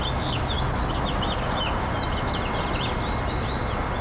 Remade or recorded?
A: recorded